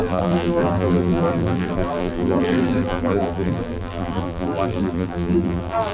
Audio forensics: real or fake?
fake